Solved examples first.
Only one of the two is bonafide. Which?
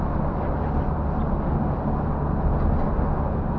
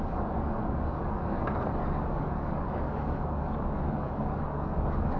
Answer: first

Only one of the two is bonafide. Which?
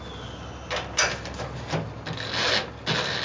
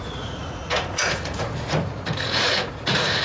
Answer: first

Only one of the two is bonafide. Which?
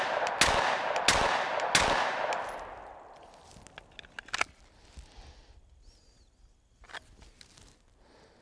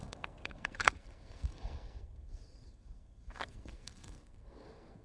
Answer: first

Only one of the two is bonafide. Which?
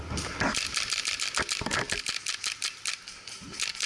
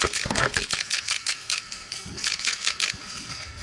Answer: first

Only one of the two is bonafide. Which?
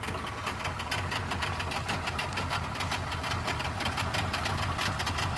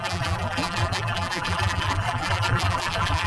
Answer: first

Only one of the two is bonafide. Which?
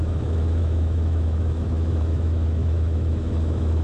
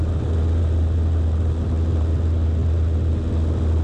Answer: second